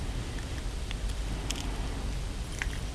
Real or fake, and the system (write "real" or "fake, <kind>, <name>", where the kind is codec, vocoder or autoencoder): real